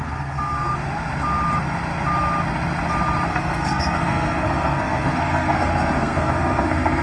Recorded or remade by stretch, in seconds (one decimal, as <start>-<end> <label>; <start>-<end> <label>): 0.0-0.7 remade; 0.7-3.3 recorded; 3.3-7.0 remade